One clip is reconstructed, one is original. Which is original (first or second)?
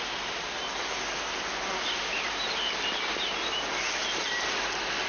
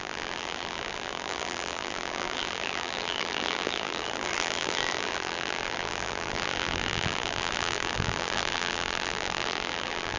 first